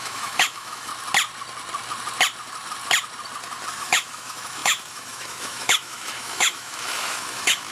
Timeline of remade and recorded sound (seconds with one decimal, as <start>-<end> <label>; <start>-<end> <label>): 0.0-0.9 remade; 0.9-3.8 recorded; 3.8-7.7 remade